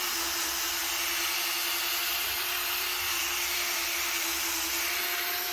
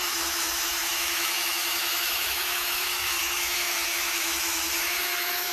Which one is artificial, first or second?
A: second